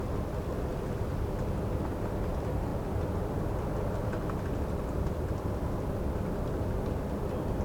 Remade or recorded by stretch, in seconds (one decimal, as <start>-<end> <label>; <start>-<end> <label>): 0.0-7.6 recorded